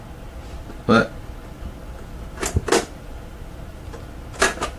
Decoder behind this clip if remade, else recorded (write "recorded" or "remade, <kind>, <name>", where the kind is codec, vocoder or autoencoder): recorded